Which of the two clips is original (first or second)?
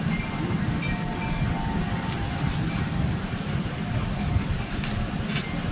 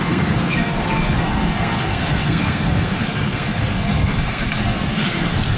first